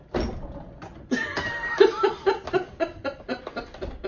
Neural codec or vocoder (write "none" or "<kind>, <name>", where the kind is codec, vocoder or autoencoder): none